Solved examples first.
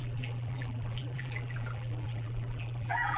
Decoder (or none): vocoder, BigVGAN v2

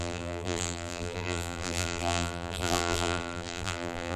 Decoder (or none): vocoder, BigVGAN v2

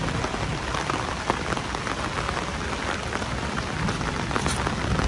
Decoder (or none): none